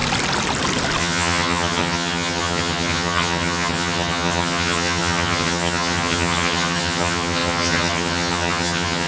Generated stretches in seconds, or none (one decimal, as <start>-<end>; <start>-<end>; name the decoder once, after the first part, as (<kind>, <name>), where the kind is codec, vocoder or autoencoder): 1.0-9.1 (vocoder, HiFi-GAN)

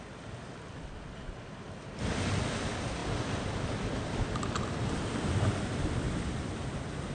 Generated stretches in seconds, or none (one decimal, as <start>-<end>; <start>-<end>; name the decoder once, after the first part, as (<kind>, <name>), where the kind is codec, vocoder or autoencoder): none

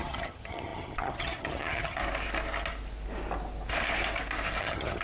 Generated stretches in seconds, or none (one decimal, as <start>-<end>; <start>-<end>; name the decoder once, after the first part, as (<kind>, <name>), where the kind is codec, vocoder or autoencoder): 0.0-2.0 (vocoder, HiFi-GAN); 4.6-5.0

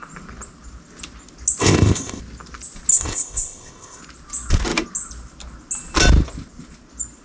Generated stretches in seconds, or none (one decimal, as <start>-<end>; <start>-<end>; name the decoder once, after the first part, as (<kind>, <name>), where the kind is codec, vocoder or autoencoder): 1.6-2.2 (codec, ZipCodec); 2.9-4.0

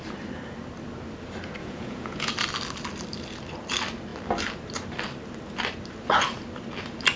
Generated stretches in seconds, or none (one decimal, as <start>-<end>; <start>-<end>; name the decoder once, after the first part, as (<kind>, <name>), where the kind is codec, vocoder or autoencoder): 1.6-2.3 (vocoder, Vocos)

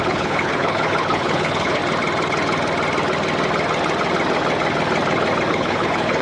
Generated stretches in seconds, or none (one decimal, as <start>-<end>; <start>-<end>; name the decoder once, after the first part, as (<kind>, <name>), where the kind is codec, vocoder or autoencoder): 0.0-1.8 (codec, HILCodec); 5.5-6.2

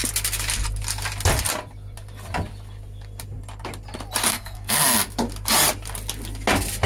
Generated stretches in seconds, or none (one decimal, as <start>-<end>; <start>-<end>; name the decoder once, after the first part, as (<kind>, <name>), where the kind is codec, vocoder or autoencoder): 4.3-4.8 (codec, SNAC)